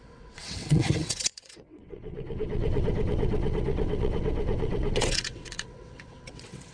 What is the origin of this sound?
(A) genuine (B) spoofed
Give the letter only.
B